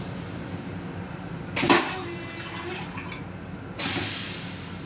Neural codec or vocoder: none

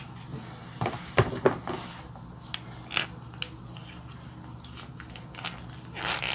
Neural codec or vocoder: none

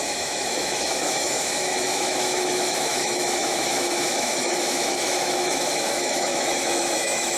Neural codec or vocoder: autoencoder, DAC-VAE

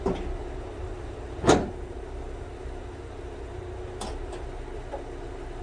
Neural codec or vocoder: none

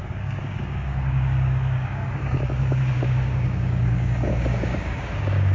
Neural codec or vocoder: codec, DAC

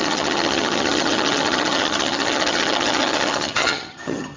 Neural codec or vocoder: vocoder, HiFi-GAN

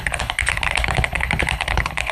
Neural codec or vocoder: codec, HILCodec